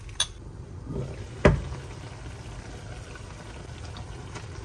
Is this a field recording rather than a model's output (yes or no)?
yes